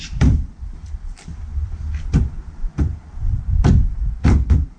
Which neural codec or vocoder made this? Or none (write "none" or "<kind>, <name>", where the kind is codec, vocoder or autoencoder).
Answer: vocoder, BigVGAN v2